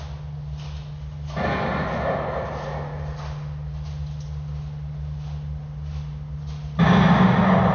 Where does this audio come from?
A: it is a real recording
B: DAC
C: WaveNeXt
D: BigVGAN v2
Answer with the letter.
A